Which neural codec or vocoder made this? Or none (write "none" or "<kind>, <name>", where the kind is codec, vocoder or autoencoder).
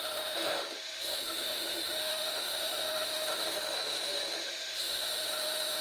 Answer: autoencoder, DAC-VAE